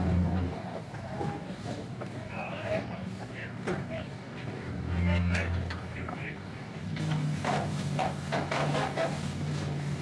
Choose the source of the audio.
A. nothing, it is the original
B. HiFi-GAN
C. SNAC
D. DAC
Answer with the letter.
D